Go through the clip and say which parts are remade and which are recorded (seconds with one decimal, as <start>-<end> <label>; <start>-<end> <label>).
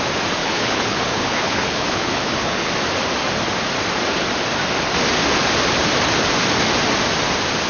0.0-0.4 recorded; 0.4-2.7 remade; 2.7-7.7 recorded